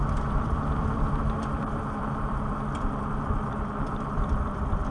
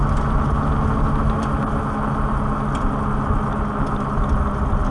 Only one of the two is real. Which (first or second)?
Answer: second